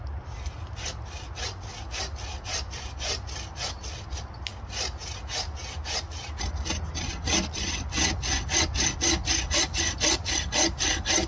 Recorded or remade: recorded